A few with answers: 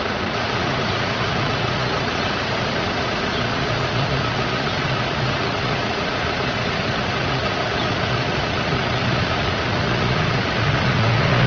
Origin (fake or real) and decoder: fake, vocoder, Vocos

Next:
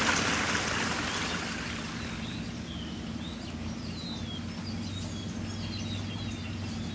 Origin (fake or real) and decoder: real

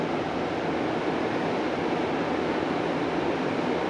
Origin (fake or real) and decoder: real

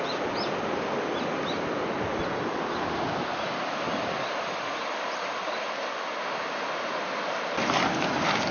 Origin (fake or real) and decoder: real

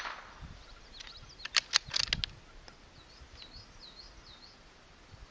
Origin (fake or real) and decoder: real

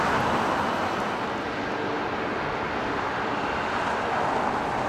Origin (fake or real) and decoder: real